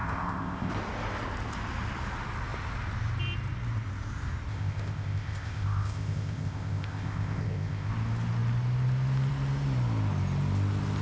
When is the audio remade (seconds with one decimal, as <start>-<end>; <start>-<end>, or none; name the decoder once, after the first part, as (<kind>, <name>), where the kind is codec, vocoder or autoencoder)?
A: 0.0-0.7 (codec, ZipCodec); 4.5-7.9